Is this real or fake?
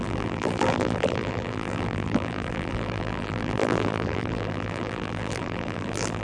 fake